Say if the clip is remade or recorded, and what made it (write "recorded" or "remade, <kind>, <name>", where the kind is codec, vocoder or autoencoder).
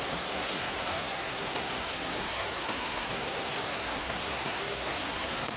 remade, codec, SNAC